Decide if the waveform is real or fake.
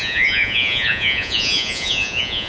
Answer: fake